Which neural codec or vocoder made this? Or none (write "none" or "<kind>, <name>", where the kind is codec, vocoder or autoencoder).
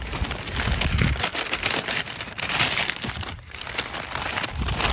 none